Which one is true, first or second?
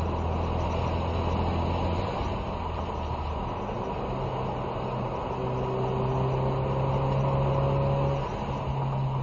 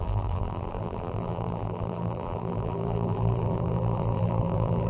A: first